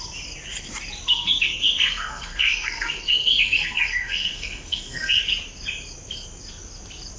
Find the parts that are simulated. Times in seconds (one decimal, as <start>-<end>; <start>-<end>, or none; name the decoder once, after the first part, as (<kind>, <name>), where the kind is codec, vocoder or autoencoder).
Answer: 1.1-5.2 (codec, SNAC)